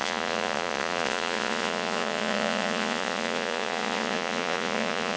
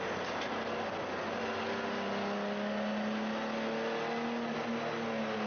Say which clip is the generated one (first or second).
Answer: first